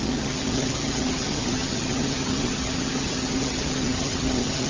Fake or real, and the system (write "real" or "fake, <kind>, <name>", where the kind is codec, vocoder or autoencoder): fake, vocoder, HiFi-GAN